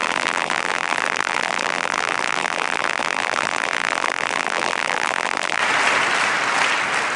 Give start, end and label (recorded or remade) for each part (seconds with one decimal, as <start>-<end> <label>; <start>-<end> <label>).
0.0-5.6 remade; 5.6-7.2 recorded